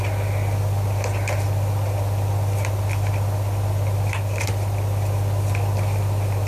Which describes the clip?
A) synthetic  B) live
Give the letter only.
B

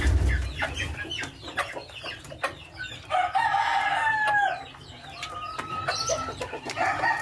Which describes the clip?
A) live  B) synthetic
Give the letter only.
A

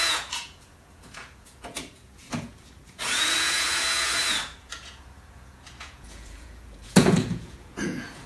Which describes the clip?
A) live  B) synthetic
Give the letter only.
B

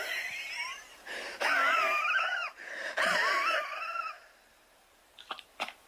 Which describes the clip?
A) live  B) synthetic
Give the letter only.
B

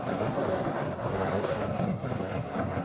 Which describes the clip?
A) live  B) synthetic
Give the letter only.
B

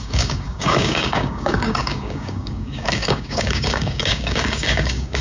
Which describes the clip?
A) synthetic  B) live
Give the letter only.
A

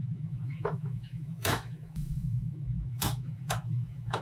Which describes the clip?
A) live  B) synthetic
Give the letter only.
B